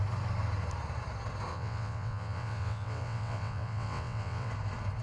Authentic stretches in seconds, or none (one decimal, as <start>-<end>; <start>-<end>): 0.0-1.5; 4.5-5.0